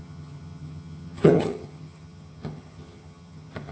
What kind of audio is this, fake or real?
fake